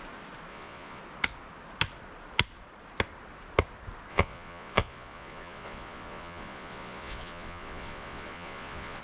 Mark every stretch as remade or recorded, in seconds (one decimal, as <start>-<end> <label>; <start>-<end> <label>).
0.0-0.5 recorded; 0.5-1.0 remade; 1.0-4.1 recorded; 4.1-9.0 remade